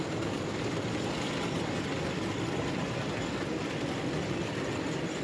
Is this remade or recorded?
recorded